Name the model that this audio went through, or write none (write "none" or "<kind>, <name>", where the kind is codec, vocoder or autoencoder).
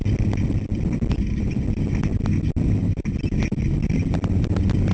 none